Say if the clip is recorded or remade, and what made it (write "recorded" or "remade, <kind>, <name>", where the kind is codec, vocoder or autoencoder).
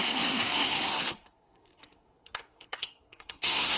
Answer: remade, codec, SNAC